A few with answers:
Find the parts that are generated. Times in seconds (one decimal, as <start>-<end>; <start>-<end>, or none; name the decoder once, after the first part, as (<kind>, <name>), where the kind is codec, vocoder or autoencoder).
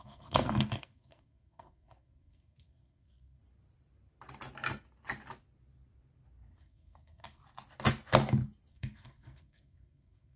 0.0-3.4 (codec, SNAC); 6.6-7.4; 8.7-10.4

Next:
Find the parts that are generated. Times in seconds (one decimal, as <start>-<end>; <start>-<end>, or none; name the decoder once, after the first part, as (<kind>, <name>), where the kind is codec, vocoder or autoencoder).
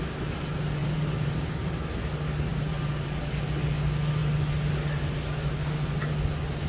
0.8-1.7 (vocoder, BigVGAN v2); 2.5-3.2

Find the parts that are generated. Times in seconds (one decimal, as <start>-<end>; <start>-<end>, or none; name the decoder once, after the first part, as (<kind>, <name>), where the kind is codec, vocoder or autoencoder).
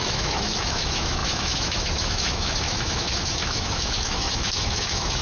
0.0-5.2 (autoencoder, DAC-VAE)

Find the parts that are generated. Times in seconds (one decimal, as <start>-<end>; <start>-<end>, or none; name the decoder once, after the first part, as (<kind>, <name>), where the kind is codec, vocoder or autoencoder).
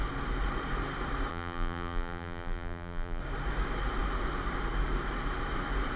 1.3-3.2 (vocoder, BigVGAN v2)